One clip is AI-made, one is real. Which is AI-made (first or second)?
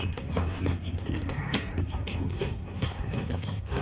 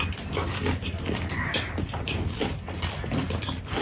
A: first